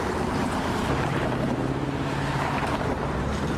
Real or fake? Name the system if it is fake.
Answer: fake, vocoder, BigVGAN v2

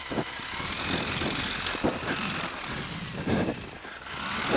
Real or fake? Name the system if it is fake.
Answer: real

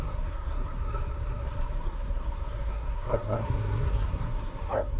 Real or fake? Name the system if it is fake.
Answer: fake, codec, SNAC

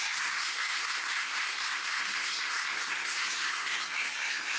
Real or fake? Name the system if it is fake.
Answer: fake, codec, SNAC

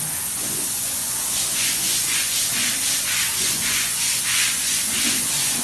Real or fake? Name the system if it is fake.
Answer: fake, vocoder, Vocos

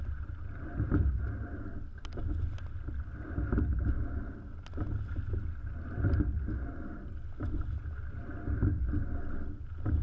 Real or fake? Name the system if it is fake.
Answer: real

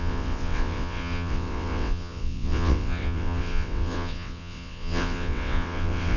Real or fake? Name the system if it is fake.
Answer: fake, vocoder, WaveNeXt